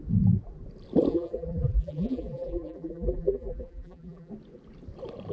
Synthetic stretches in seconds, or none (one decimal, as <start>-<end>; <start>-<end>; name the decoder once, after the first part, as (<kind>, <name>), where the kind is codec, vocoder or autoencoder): 1.1-4.3 (vocoder, BigVGAN v2)